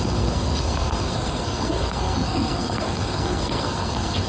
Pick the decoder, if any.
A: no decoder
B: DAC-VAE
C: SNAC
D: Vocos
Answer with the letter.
C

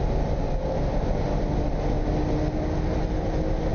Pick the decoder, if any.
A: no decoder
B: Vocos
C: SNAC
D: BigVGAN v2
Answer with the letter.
A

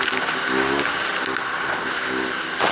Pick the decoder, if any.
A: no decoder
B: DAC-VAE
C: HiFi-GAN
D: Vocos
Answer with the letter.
A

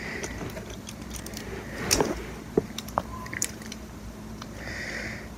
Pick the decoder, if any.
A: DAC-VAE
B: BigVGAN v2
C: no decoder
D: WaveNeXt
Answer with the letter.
B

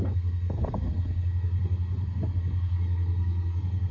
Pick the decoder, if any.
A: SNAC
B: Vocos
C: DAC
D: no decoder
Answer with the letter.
A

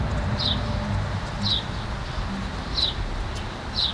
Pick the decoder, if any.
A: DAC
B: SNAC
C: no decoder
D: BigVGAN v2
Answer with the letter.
C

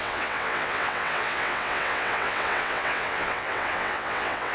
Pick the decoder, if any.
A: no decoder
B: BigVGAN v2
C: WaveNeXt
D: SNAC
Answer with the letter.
C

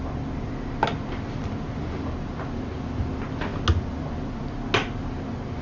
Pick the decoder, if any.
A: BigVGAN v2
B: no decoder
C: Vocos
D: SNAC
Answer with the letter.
B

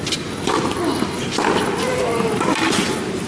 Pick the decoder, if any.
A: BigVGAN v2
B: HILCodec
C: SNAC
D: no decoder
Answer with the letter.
D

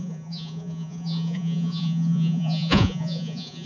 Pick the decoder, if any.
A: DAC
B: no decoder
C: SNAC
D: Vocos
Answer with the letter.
D